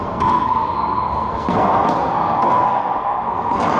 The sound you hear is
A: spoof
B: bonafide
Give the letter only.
A